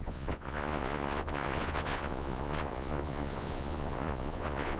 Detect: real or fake fake